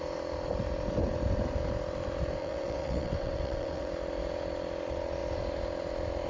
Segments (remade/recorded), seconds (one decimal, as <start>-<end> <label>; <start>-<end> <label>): 0.0-2.4 recorded; 2.4-3.9 remade; 3.9-6.3 recorded